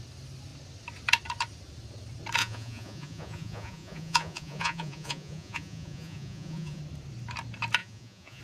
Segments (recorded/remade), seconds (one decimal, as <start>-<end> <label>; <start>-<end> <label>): 0.0-2.4 recorded; 2.4-6.8 remade; 6.8-7.8 recorded; 7.8-8.4 remade